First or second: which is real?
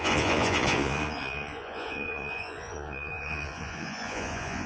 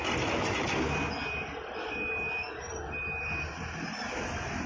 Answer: second